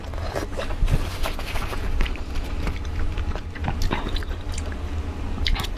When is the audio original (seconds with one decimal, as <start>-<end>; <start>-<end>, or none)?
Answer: 0.0-1.1; 4.6-5.8